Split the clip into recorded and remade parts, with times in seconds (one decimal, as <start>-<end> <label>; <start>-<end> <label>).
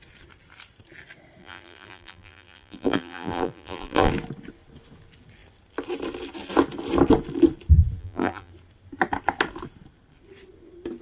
0.0-1.4 recorded; 1.4-4.1 remade; 4.1-8.0 recorded; 8.0-8.5 remade; 8.5-11.0 recorded